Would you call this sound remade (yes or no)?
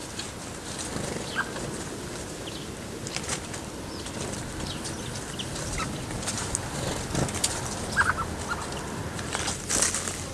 no